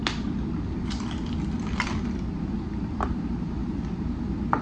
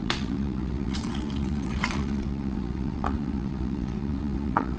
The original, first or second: first